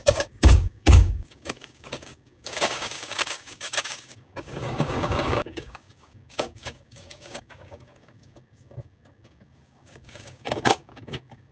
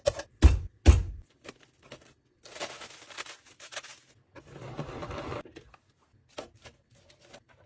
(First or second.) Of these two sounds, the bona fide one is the second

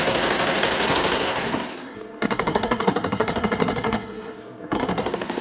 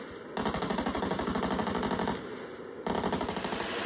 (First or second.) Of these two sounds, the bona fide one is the second